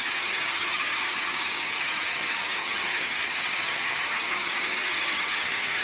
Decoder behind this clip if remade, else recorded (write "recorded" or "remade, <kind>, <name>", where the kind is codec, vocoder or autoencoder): remade, vocoder, HiFi-GAN